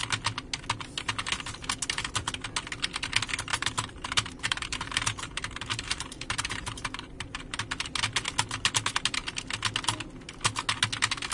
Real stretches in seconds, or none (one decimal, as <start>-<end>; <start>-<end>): 0.0-3.5; 7.4-11.3

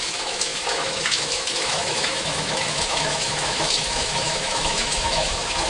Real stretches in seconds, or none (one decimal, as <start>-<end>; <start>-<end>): none

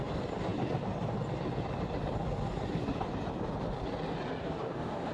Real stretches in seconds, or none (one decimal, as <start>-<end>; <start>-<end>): 0.0-4.4

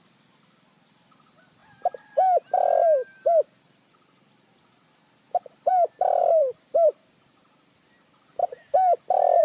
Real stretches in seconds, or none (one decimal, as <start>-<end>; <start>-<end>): 1.6-5.7; 8.4-9.4